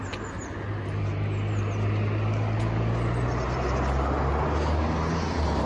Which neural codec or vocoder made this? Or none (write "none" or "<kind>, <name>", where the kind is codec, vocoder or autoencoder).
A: none